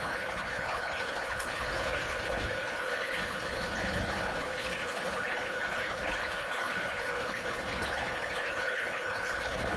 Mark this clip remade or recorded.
remade